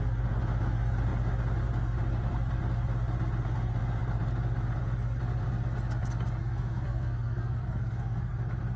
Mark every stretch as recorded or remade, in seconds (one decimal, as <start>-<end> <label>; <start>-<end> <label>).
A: 0.0-6.4 recorded; 6.4-8.3 remade; 8.3-8.8 recorded